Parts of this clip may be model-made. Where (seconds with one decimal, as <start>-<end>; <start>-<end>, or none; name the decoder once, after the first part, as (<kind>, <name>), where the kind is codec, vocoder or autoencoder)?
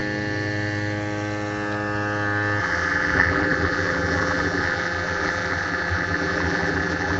2.6-7.2 (vocoder, BigVGAN v2)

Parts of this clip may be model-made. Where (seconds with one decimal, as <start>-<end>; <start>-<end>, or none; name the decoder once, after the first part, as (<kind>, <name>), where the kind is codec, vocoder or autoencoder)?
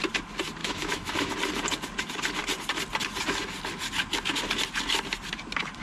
0.6-1.3 (autoencoder, DAC-VAE)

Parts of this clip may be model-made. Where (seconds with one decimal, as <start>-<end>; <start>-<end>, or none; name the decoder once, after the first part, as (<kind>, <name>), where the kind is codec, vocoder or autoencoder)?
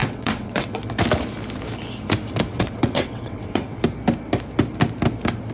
0.0-0.8 (vocoder, WaveNeXt); 2.5-3.8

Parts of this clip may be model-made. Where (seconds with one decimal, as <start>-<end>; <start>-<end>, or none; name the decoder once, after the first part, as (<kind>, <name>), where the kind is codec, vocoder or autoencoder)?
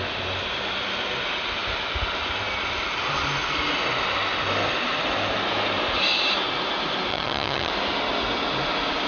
7.1-7.7 (vocoder, HiFi-GAN)